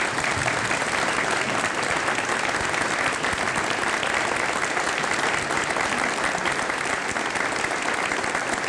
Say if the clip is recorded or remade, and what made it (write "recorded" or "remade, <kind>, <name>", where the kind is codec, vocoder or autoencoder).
recorded